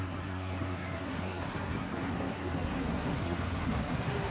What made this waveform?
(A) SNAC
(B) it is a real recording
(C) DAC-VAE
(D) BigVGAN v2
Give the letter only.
A